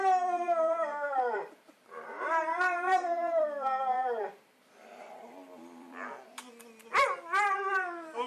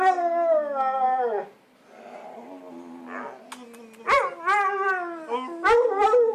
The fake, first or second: first